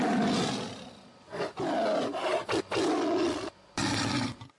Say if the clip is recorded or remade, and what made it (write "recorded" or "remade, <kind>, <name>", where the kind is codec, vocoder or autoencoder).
recorded